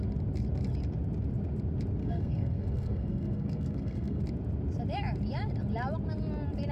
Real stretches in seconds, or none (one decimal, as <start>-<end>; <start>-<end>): 0.0-2.0; 4.2-6.7